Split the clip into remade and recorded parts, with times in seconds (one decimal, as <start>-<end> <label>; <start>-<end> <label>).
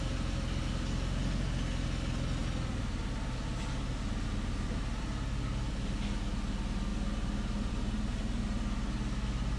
0.0-9.6 recorded